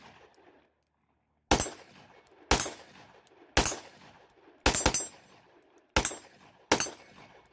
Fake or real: real